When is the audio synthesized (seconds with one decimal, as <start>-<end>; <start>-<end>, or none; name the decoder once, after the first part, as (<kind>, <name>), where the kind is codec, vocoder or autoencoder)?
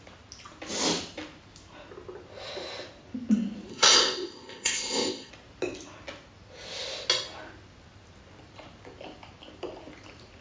3.7-5.3 (codec, ZipCodec)